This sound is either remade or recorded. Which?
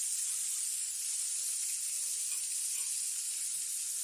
recorded